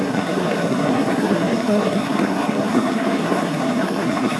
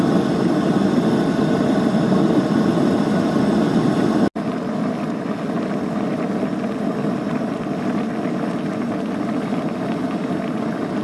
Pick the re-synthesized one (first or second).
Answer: first